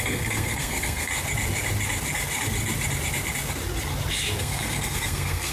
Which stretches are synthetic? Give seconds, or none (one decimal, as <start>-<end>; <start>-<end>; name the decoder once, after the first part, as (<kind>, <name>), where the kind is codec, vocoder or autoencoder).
0.0-1.1 (codec, SNAC); 4.4-5.5